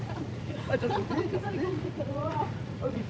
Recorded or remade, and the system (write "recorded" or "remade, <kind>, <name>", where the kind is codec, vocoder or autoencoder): remade, vocoder, Vocos